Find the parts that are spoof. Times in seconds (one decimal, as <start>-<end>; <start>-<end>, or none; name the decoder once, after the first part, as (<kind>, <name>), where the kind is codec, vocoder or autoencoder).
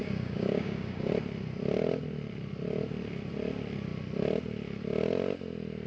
0.0-1.1 (codec, DAC)